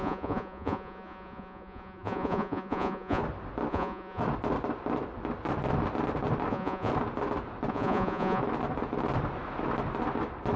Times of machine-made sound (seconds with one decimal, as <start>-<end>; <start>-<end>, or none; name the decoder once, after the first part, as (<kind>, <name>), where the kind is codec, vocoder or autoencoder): 0.0-3.2 (vocoder, Vocos); 3.7-4.2; 6.5-6.9; 7.7-8.4

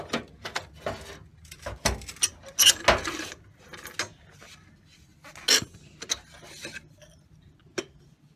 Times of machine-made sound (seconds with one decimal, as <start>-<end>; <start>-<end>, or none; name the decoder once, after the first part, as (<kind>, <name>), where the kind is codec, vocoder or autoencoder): none

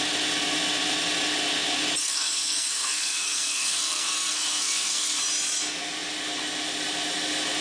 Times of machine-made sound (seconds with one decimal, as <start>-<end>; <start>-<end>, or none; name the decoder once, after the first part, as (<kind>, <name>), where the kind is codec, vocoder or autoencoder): 2.0-5.2 (codec, SNAC)

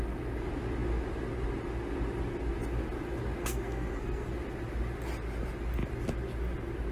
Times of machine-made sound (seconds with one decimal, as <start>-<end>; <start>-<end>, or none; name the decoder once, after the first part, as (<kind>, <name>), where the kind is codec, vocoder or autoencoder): 3.4-4.3 (codec, SNAC)

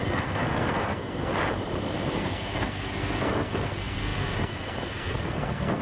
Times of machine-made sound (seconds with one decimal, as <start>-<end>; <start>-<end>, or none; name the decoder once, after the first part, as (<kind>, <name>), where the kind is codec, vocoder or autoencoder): 0.0-1.3 (codec, SNAC); 2.1-5.8

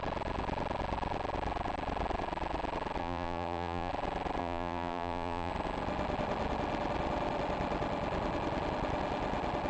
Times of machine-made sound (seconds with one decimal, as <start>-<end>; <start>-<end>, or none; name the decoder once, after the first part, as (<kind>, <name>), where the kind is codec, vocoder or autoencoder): 3.0-3.9 (vocoder, BigVGAN v2); 4.4-5.5

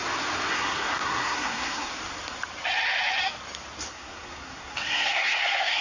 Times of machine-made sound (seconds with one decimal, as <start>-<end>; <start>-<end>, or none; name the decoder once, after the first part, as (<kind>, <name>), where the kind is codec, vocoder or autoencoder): 0.5-1.9 (codec, SNAC); 3.9-5.8